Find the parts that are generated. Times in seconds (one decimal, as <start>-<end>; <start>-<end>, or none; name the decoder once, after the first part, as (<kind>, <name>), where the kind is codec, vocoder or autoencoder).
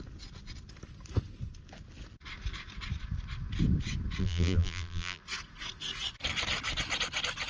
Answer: 4.2-5.2 (vocoder, BigVGAN v2)